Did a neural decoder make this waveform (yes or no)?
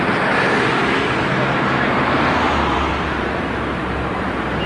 yes